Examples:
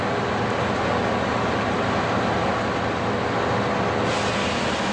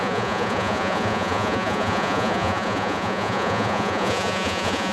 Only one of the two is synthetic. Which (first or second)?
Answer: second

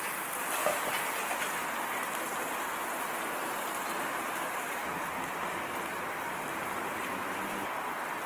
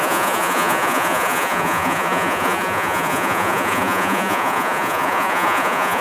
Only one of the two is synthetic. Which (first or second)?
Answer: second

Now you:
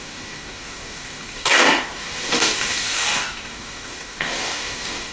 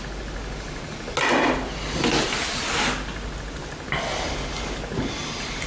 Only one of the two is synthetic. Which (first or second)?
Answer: first